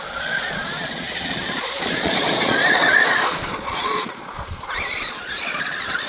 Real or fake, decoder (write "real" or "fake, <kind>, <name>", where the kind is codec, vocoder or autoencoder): fake, vocoder, Vocos